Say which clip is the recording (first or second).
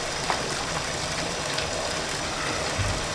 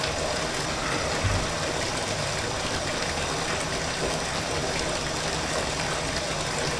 second